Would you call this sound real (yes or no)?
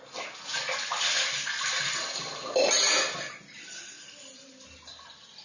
yes